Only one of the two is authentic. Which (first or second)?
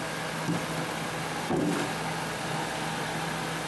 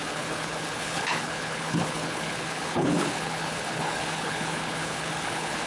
first